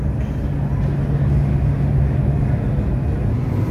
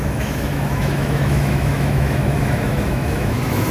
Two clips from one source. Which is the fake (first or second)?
second